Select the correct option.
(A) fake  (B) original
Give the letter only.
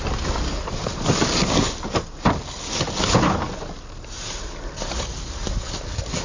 B